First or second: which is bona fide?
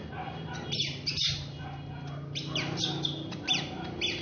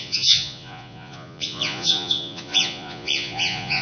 first